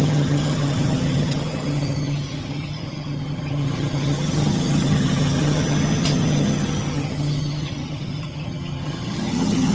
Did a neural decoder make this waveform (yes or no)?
yes